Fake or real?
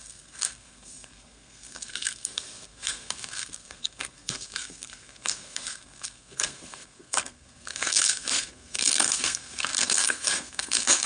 fake